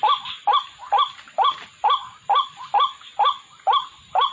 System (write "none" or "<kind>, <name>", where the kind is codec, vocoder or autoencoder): none